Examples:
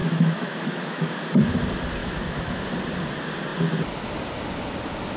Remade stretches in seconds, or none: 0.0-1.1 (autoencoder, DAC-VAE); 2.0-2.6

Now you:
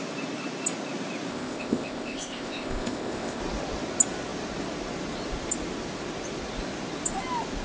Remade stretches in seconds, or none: 1.3-3.4 (codec, ZipCodec)

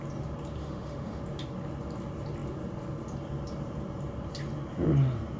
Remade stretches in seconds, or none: 0.6-1.2 (autoencoder, DAC-VAE)